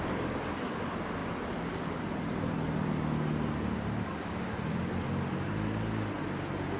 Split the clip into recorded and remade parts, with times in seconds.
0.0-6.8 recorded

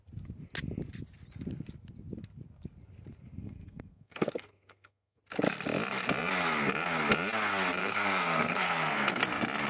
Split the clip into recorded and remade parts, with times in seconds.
0.0-3.4 recorded; 3.4-5.2 remade; 5.2-7.8 recorded; 7.8-9.2 remade; 9.2-9.7 recorded